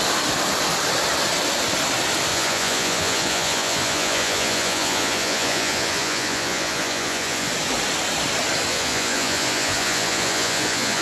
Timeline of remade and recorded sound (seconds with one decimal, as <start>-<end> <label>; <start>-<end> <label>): 0.0-2.3 recorded; 2.3-7.5 remade; 7.5-8.7 recorded; 8.7-11.0 remade